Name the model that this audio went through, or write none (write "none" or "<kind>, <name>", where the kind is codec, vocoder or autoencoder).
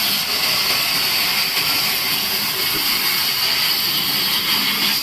none